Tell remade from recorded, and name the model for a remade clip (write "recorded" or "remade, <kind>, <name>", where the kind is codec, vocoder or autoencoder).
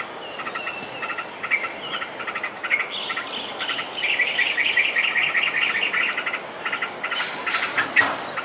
recorded